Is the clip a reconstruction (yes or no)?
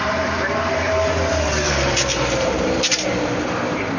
yes